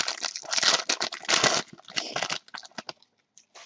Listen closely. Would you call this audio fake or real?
real